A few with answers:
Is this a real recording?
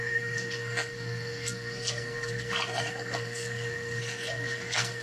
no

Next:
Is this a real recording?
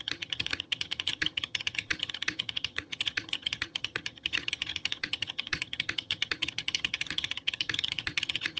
no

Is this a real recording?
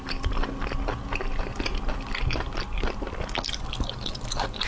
yes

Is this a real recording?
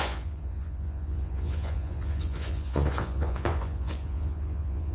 no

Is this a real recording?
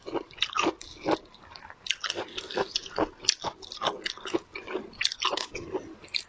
yes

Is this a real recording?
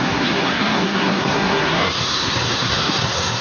no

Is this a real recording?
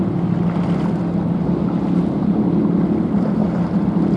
yes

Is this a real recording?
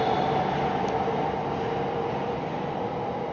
yes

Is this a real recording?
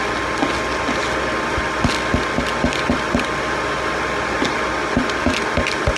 yes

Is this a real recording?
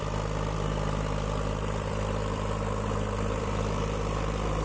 no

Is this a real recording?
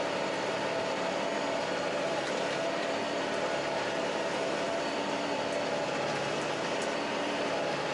no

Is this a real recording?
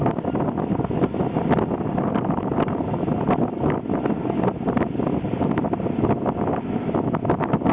yes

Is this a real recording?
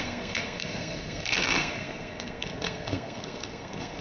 no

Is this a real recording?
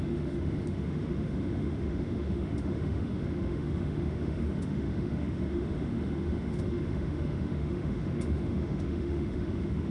no